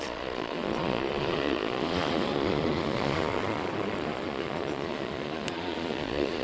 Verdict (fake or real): fake